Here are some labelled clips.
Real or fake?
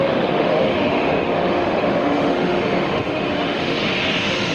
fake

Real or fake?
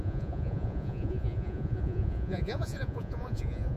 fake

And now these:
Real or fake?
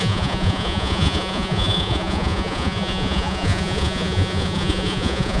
fake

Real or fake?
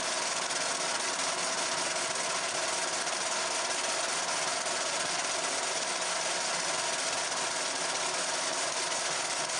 real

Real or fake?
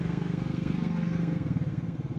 fake